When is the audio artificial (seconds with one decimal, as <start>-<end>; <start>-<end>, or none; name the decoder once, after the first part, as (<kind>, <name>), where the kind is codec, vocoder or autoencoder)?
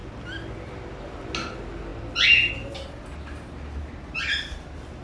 none